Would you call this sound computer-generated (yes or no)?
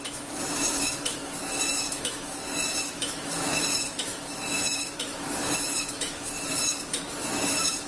yes